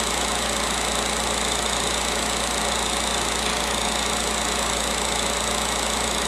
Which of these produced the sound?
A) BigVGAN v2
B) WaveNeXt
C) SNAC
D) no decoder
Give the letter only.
D